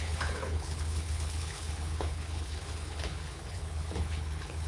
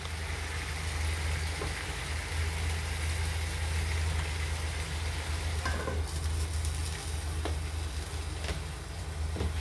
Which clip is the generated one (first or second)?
first